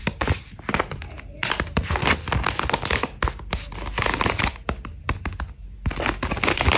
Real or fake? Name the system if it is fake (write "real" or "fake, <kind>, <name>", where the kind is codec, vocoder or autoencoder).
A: real